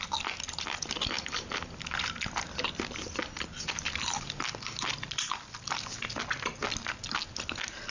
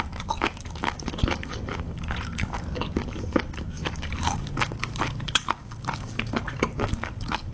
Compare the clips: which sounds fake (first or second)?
second